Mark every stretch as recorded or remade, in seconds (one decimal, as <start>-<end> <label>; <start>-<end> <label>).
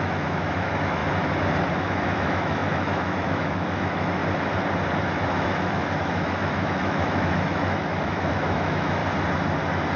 0.0-1.0 remade; 1.0-1.7 recorded; 1.7-4.2 remade; 4.2-5.0 recorded; 5.0-9.0 remade; 9.0-10.0 recorded